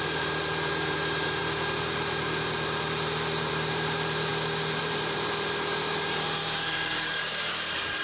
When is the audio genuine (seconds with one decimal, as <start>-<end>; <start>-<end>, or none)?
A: 4.3-4.8